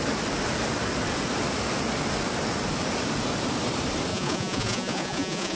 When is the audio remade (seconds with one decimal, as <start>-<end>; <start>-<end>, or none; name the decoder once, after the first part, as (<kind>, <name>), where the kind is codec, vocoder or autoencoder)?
4.1-5.6 (vocoder, Vocos)